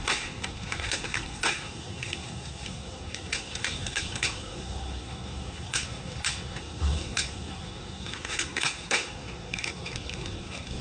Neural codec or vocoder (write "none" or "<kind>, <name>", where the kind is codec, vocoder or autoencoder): codec, SNAC